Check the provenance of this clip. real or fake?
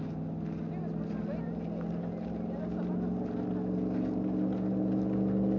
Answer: real